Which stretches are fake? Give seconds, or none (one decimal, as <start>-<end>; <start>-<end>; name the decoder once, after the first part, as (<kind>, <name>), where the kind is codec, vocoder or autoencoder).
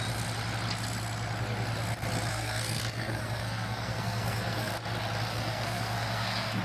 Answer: 2.3-4.7 (codec, SNAC); 5.3-6.6